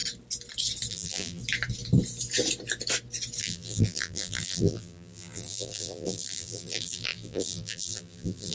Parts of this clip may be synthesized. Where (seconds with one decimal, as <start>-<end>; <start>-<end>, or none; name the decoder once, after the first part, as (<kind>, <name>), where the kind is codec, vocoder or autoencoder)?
0.9-1.4 (vocoder, BigVGAN v2); 3.4-8.5